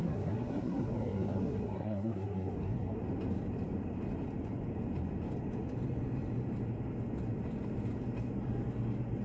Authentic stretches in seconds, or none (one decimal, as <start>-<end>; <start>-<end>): 3.0-9.2